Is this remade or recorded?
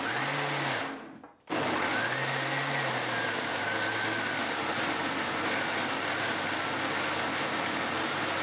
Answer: recorded